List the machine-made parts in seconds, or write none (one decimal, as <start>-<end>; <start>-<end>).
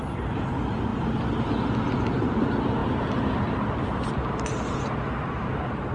0.9-1.5